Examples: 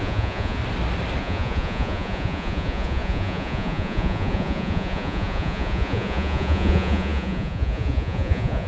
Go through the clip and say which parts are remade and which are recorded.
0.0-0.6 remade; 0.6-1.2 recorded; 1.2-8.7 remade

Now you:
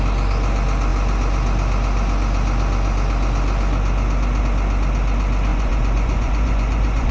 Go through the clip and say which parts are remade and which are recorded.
0.0-5.5 recorded; 5.5-7.1 remade

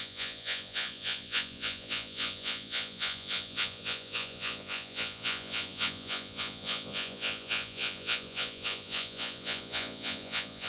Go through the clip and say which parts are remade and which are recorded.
0.0-10.7 remade

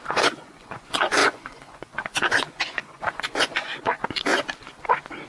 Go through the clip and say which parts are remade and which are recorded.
0.0-4.3 remade; 4.3-5.3 recorded

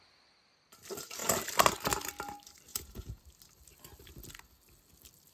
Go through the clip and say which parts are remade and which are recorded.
0.0-2.7 recorded; 2.7-3.2 remade; 3.2-5.3 recorded

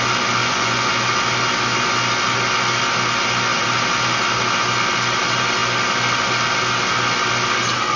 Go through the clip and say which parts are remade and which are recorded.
0.0-0.4 recorded; 0.4-0.9 remade; 0.9-8.0 recorded

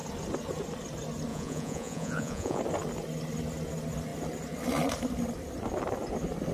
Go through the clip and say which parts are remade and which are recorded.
0.0-1.3 recorded; 1.3-2.6 remade; 2.6-6.5 recorded